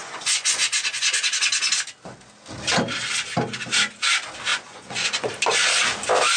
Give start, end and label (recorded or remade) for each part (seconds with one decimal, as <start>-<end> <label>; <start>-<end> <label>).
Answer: 0.0-1.5 remade; 1.5-4.5 recorded; 4.5-5.3 remade; 5.3-6.4 recorded